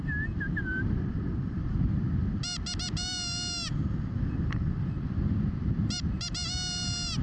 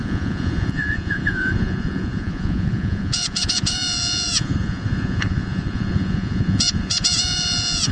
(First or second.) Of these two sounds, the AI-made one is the second